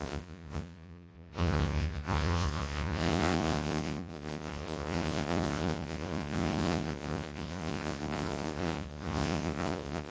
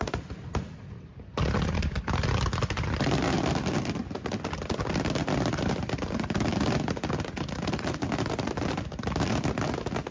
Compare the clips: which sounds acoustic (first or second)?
second